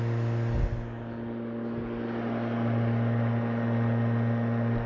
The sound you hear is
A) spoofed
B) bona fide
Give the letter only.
B